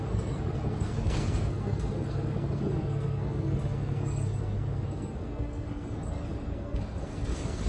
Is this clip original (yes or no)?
no